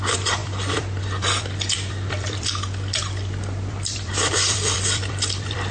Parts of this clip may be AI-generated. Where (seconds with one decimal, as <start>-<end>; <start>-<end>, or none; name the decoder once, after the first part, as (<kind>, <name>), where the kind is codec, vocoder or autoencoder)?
0.0-5.7 (vocoder, BigVGAN v2)